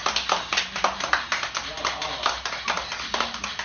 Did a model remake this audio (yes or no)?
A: no